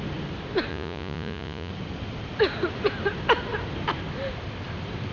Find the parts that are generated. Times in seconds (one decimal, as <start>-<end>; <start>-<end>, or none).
0.7-1.7